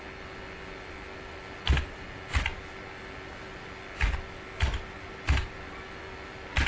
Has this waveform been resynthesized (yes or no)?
no